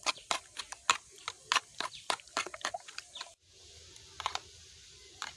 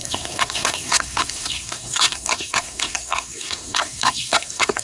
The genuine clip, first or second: first